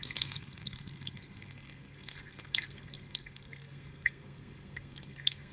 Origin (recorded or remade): remade